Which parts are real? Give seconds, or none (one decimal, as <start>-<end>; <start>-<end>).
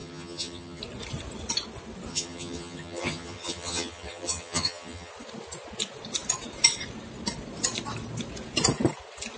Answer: 0.8-2.1; 5.1-9.4